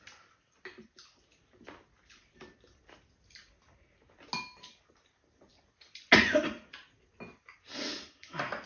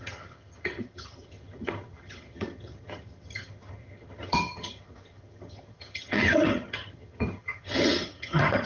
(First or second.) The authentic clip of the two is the first